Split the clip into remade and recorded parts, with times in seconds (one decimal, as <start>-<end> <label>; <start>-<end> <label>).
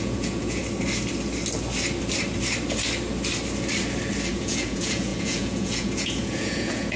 0.0-0.6 remade; 0.6-4.3 recorded; 4.3-7.0 remade